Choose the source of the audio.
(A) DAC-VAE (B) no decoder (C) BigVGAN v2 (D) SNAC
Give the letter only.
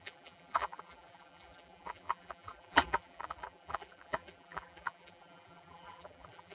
C